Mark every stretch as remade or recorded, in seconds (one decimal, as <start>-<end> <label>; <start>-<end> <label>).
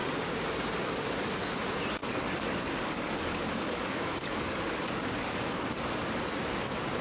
0.0-2.0 recorded; 2.0-5.7 remade; 5.7-7.0 recorded